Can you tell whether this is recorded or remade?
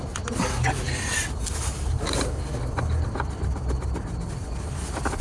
recorded